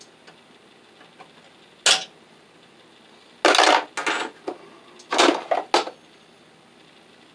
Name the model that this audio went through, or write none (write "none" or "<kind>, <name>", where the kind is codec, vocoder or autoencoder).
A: none